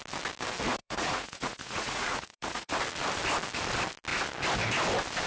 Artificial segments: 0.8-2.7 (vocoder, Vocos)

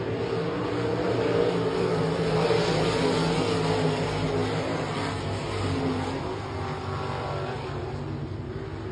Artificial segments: none

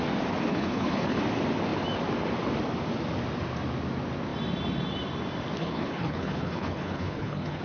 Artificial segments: 0.5-1.2 (codec, HILCodec); 5.6-7.6